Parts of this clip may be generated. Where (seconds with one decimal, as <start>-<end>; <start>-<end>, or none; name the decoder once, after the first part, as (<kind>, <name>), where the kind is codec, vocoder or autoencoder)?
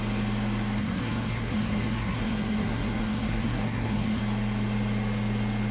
0.8-4.2 (codec, SNAC)